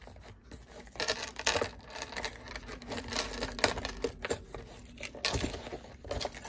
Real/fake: real